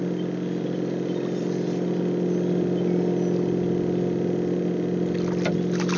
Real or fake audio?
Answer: real